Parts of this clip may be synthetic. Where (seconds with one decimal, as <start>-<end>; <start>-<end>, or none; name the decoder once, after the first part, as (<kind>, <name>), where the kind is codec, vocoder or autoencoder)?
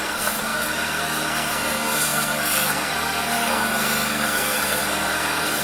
0.0-5.6 (codec, SNAC)